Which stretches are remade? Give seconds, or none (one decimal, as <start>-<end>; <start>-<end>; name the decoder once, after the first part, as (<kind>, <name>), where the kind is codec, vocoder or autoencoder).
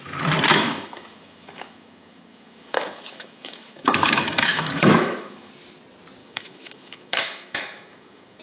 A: 0.5-5.5 (autoencoder, DAC-VAE); 6.2-8.4